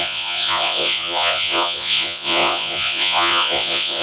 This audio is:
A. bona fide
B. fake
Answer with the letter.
B